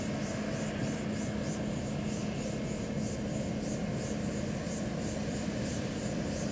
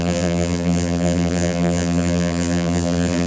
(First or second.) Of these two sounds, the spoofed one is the second